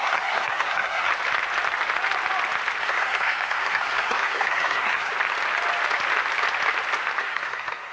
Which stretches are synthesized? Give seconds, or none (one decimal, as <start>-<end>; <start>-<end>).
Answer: 0.0-1.1; 2.8-5.1; 7.2-7.9